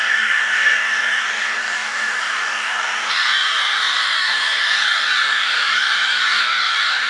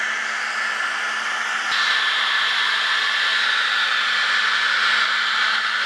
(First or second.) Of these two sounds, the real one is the second